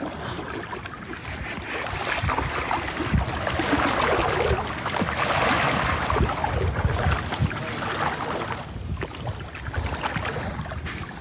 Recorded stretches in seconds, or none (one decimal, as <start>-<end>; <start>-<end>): 0.0-11.2